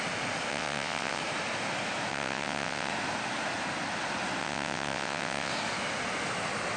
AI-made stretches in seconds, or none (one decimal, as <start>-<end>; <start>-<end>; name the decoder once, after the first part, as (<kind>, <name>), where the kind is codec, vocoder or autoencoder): 0.5-1.2 (vocoder, WaveNeXt); 2.1-2.9; 4.4-5.5